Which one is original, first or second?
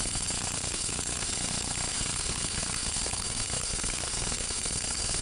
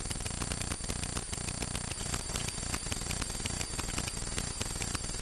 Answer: second